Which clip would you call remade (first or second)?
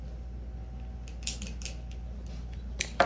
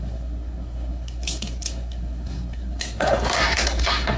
second